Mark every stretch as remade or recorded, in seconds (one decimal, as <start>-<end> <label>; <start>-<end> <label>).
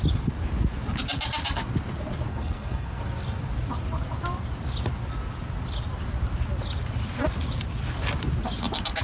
0.0-2.3 recorded; 2.3-3.0 remade; 3.0-9.0 recorded